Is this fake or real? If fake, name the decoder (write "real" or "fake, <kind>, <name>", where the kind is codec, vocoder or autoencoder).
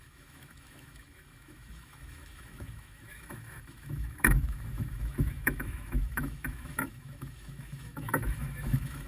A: fake, autoencoder, DAC-VAE